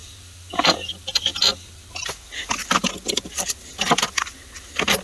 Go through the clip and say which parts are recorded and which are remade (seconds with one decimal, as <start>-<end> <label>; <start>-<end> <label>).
0.0-1.3 remade; 1.3-4.3 recorded; 4.3-5.0 remade